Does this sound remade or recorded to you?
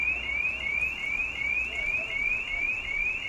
recorded